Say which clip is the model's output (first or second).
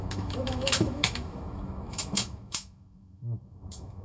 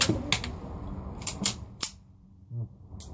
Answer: first